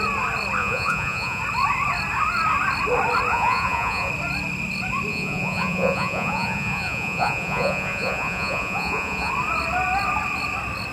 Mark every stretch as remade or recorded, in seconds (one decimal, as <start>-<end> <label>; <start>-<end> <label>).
0.0-0.6 recorded; 0.6-1.4 remade; 1.4-3.3 recorded; 3.3-4.1 remade; 4.1-5.1 recorded; 5.1-9.3 remade; 9.3-10.9 recorded